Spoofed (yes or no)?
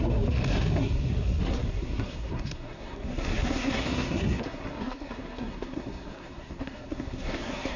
yes